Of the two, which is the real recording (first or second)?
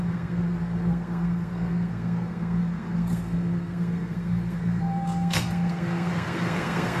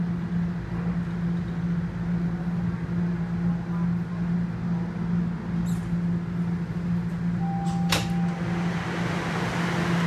second